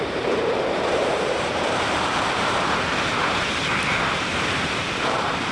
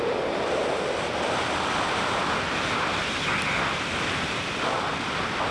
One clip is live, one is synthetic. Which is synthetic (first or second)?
first